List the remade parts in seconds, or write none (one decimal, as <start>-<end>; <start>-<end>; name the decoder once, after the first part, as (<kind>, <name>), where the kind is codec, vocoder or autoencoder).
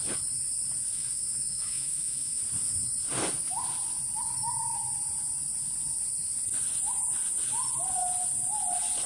0.9-2.4 (autoencoder, DAC-VAE)